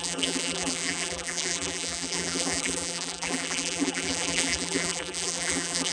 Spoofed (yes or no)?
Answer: yes